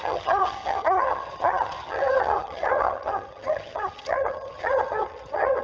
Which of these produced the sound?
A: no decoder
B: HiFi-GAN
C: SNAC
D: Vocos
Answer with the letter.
B